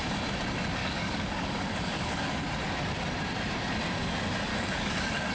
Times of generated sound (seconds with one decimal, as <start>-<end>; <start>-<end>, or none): 0.8-2.4; 4.5-5.3